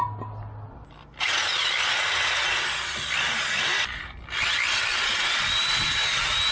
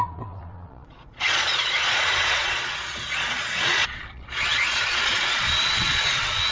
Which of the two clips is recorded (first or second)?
first